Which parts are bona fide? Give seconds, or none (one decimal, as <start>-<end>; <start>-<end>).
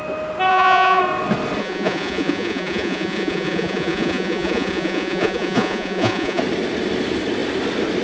0.0-0.5; 1.0-1.6; 6.4-8.0